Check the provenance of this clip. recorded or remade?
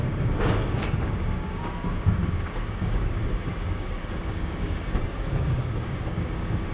remade